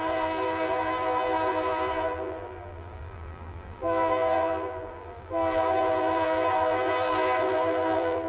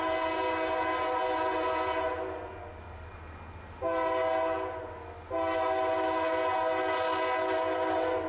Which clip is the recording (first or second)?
second